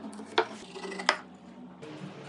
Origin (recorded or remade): recorded